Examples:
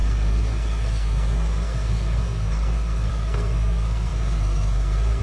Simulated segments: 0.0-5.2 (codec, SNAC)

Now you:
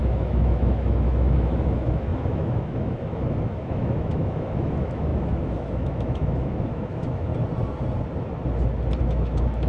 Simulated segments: 0.0-7.3 (autoencoder, DAC-VAE); 9.0-9.7

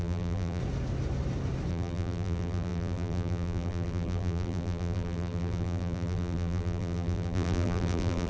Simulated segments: 0.0-0.6 (vocoder, BigVGAN v2); 1.7-8.3